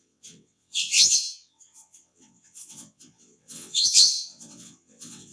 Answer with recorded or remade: remade